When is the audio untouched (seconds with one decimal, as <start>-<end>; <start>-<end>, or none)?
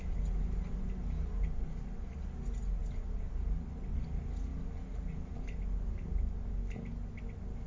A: 0.0-2.8; 3.9-7.7